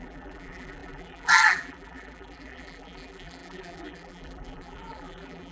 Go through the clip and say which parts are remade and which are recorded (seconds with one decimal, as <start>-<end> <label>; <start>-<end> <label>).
0.0-5.5 remade